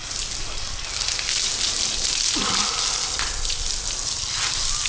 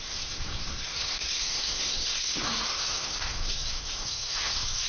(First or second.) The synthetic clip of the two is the second